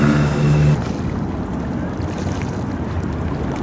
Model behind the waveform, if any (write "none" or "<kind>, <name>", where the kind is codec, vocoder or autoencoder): none